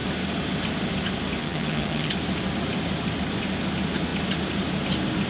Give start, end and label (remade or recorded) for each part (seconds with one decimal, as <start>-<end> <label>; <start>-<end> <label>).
0.0-1.4 recorded; 1.4-2.1 remade; 2.1-5.3 recorded